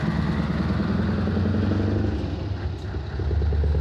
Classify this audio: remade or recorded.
recorded